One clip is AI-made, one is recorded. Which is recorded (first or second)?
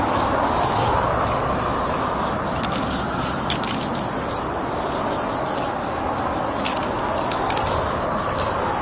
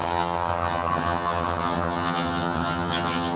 first